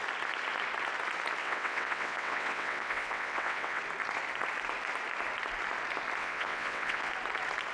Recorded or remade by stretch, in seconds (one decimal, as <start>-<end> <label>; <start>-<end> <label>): 0.0-1.4 recorded; 1.4-3.8 remade; 3.8-6.2 recorded; 6.2-7.1 remade; 7.1-7.7 recorded